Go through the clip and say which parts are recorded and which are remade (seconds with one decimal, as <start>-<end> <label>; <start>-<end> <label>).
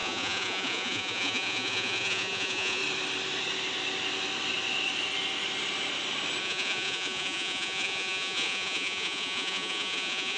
0.0-2.8 remade; 2.8-6.4 recorded; 6.4-10.4 remade